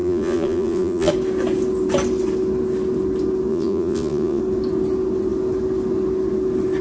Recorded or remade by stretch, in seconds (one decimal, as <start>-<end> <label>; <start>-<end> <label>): 0.0-1.1 remade; 1.1-3.5 recorded; 3.5-4.4 remade; 4.4-6.8 recorded